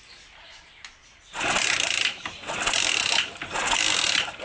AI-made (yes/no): no